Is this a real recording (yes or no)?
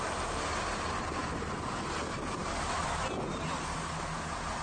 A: yes